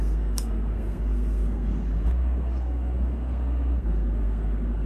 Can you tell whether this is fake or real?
fake